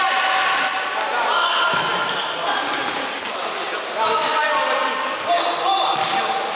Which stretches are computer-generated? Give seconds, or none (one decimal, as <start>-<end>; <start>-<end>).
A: none